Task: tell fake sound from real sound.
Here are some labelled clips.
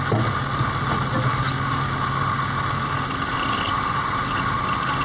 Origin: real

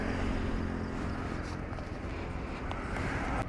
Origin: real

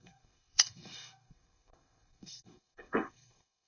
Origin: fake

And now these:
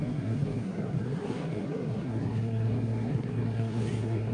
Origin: fake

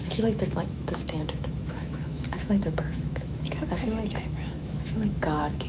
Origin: fake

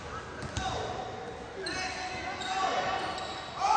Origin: real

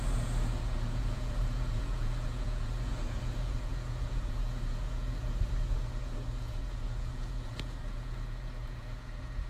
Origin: fake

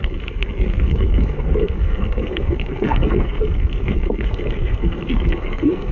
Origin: fake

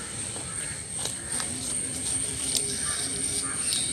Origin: real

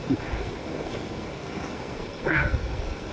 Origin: fake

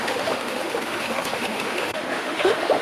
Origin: fake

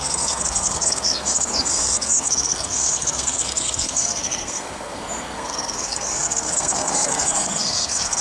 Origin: fake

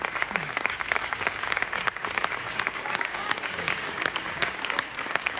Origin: fake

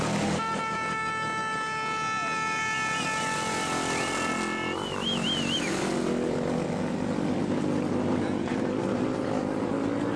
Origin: real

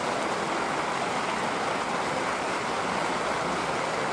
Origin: real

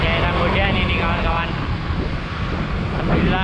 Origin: real